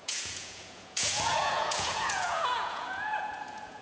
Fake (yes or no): yes